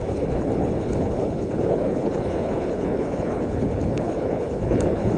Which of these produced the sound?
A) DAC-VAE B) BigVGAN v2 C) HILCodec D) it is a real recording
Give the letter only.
C